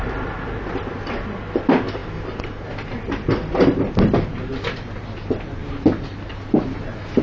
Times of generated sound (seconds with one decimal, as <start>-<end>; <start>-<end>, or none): 0.0-2.0; 5.0-7.2